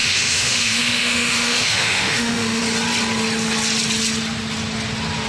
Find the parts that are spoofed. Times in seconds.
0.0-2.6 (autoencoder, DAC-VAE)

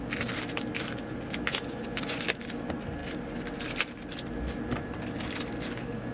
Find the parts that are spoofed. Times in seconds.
1.5-2.2 (vocoder, Vocos)